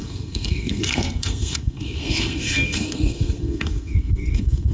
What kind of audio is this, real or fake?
fake